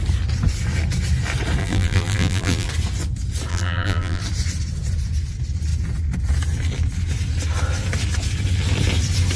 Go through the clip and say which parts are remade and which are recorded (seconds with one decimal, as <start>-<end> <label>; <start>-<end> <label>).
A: 0.0-1.6 recorded; 1.6-2.7 remade; 2.7-3.5 recorded; 3.5-4.2 remade; 4.2-9.4 recorded